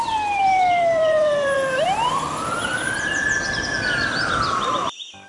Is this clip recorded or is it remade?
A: remade